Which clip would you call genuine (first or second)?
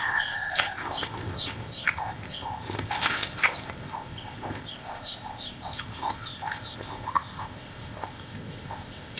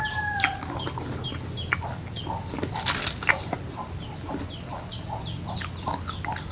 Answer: second